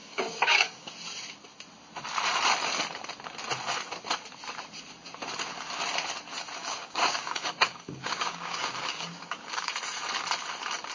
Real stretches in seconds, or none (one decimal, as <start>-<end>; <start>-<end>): 0.9-6.6; 9.7-10.9